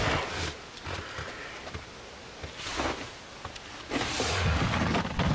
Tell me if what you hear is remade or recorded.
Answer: recorded